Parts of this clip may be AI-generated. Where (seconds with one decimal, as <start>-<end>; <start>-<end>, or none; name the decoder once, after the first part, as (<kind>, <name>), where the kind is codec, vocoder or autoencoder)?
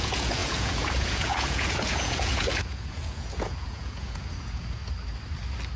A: 0.0-4.8 (vocoder, Vocos)